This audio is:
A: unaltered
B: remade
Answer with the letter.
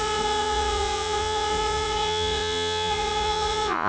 B